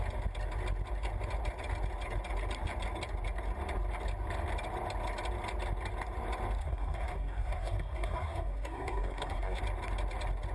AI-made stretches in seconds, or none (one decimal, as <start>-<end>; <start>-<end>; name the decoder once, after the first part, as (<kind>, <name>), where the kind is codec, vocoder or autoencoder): 6.6-9.6 (codec, SNAC)